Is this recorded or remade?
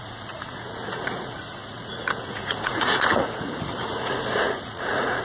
remade